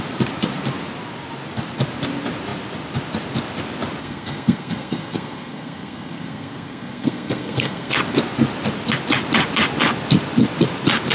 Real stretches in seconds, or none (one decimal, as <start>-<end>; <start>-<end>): 0.0-4.0; 7.9-11.1